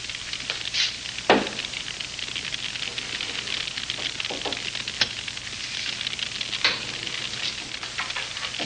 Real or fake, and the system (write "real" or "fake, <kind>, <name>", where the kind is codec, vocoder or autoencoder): real